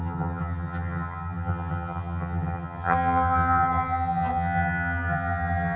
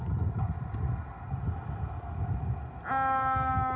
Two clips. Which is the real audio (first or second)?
second